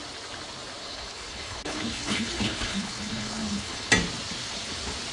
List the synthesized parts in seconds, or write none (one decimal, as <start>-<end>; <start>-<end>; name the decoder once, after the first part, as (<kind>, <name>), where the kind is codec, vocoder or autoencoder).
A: 0.8-3.9 (codec, HILCodec)